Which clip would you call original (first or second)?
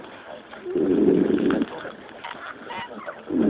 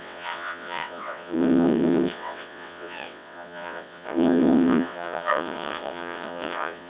first